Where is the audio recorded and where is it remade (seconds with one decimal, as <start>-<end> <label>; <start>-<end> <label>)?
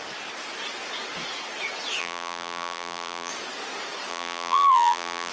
0.0-2.0 recorded; 2.0-3.3 remade; 3.3-4.1 recorded; 4.1-5.3 remade